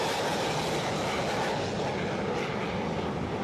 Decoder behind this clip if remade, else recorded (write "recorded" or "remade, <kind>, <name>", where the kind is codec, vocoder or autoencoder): recorded